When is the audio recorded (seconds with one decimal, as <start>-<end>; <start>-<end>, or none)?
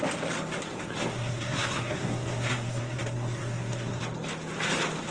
0.0-1.1; 4.0-5.1